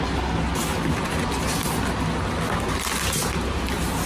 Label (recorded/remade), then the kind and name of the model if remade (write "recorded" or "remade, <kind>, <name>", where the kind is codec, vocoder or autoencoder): recorded